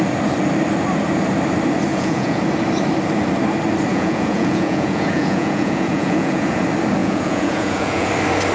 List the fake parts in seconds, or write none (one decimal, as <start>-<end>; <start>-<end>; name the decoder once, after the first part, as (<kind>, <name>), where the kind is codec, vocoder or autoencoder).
1.9-2.4 (vocoder, Vocos); 3.9-6.6; 7.0-8.1